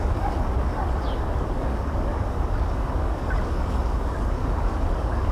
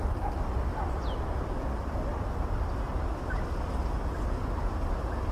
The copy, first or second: first